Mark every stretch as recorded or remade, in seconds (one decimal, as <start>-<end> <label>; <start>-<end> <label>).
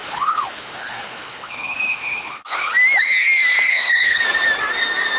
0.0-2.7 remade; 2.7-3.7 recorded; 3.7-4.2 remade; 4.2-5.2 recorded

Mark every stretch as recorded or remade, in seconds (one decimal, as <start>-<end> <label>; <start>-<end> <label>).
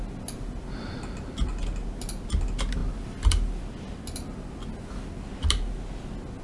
0.0-6.4 recorded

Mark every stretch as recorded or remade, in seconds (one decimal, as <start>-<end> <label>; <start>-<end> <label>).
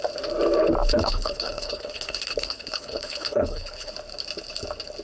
0.0-0.9 recorded; 0.9-3.9 remade; 3.9-5.0 recorded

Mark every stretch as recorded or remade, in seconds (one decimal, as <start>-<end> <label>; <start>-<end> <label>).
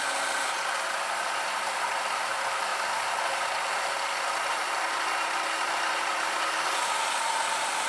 0.0-7.9 recorded